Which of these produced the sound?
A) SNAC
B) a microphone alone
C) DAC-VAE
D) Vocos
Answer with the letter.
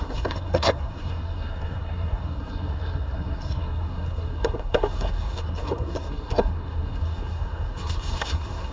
A